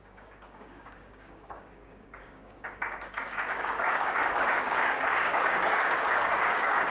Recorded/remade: remade